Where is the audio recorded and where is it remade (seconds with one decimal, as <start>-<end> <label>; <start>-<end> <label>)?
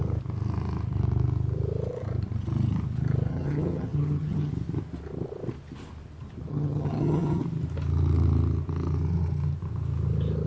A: 0.0-3.3 recorded; 3.3-4.5 remade; 4.5-6.5 recorded; 6.5-7.4 remade; 7.4-10.5 recorded